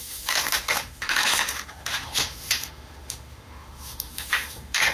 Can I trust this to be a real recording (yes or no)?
no